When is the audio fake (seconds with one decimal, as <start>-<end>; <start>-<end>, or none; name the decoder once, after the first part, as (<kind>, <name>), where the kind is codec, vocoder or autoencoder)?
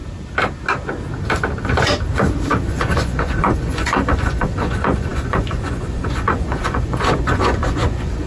2.7-8.3 (vocoder, Vocos)